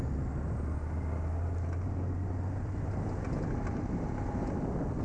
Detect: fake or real real